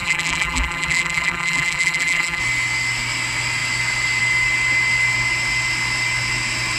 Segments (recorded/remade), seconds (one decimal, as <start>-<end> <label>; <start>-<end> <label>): 0.0-2.4 remade; 2.4-6.8 recorded